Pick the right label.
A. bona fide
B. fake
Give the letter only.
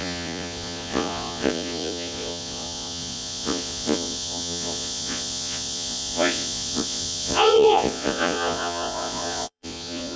B